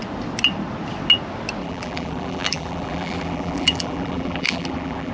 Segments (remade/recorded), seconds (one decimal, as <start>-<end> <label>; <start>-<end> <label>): 0.0-1.6 recorded; 1.6-5.1 remade